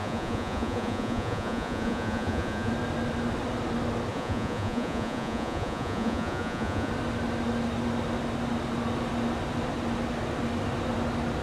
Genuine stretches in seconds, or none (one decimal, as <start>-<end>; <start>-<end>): 2.7-4.1; 6.9-11.4